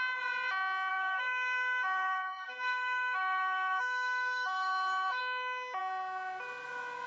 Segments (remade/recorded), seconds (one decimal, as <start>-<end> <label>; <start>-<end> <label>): 0.0-0.9 recorded; 0.9-5.2 remade; 5.2-7.1 recorded